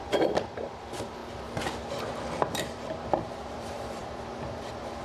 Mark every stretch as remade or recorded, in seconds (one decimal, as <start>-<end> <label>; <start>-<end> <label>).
0.0-1.2 remade; 1.2-2.3 recorded; 2.3-5.0 remade